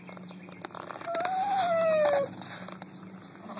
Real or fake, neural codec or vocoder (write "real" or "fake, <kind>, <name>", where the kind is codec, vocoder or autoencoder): real